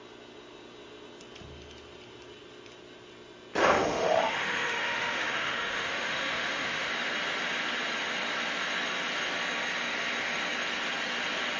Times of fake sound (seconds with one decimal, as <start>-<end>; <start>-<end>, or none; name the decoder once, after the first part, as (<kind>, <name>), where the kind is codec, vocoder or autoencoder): 3.6-6.9 (autoencoder, DAC-VAE)